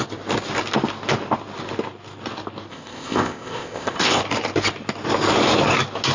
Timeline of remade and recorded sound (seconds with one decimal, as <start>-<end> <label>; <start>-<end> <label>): 0.0-2.7 recorded; 2.7-4.2 remade; 4.2-6.1 recorded